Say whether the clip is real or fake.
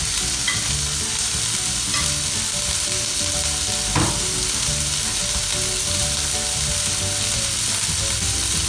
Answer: real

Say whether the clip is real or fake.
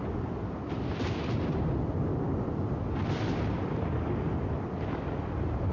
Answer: real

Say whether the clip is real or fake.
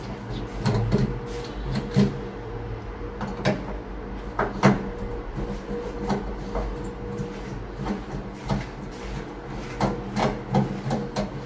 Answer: real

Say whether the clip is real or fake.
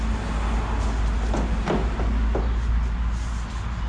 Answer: real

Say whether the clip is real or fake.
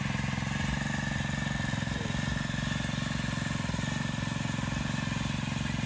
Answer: real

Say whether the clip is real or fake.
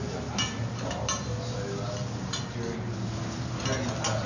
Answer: real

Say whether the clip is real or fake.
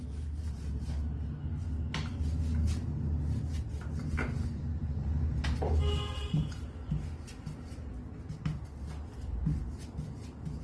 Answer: real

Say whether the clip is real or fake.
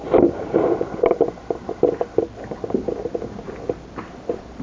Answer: real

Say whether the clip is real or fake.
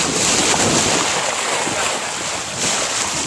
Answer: real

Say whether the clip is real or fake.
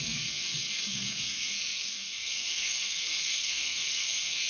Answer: fake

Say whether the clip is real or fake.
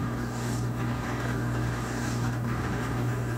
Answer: fake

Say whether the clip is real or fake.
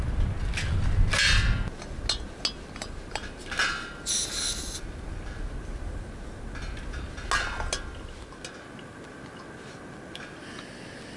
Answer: real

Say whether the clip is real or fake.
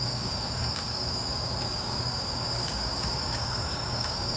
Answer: fake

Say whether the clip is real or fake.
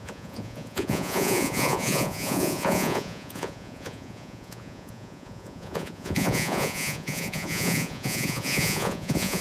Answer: fake